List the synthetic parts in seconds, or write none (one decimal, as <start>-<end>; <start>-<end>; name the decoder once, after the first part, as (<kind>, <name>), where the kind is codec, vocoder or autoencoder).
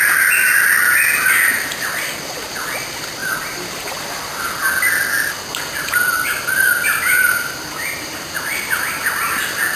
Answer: 3.2-4.0 (vocoder, BigVGAN v2); 6.7-9.3